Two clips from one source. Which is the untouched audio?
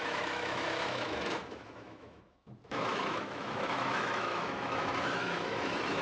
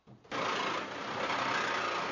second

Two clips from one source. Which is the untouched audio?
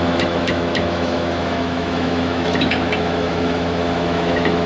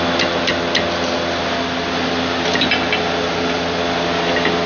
second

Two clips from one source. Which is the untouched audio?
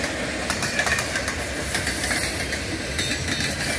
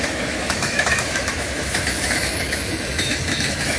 first